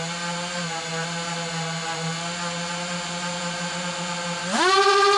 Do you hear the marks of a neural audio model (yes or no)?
no